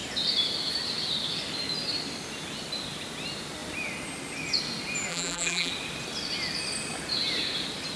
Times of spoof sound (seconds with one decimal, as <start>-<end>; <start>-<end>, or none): 5.1-5.7